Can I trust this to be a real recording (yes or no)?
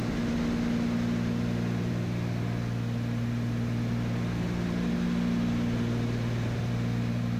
yes